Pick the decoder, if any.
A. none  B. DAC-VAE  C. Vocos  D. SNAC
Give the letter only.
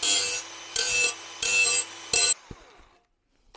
A